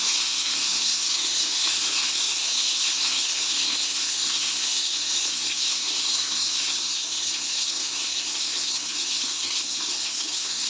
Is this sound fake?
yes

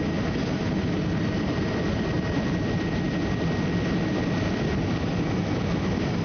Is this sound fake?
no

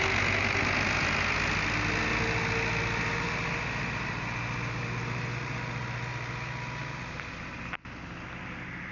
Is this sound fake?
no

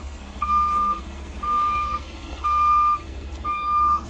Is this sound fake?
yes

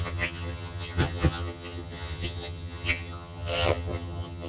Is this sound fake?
yes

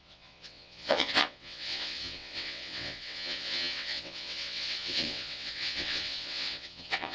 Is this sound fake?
yes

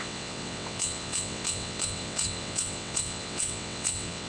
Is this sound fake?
yes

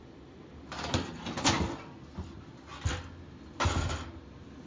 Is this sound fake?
no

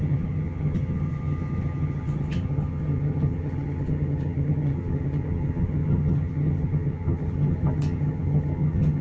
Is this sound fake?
yes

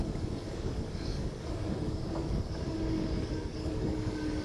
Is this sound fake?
yes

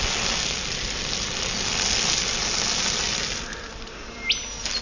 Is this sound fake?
no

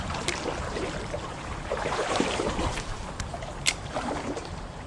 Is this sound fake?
yes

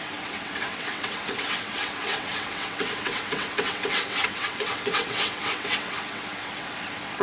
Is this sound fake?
yes